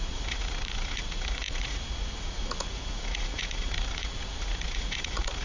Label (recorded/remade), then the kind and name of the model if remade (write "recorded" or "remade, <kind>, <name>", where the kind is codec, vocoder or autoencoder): remade, vocoder, Vocos